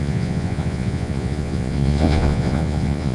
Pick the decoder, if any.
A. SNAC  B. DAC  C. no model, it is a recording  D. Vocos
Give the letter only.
D